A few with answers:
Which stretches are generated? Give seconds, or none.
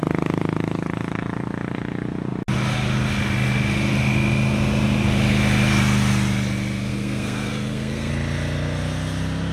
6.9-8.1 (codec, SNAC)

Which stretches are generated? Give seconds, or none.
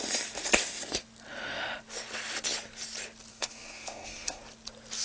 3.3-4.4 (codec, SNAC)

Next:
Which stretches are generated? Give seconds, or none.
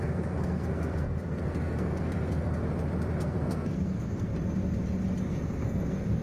0.0-2.6 (codec, SNAC); 3.2-4.3; 5.2-6.2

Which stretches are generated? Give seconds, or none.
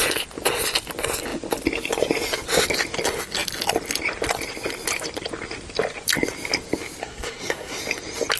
7.0-7.8 (codec, SNAC)